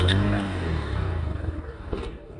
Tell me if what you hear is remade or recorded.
remade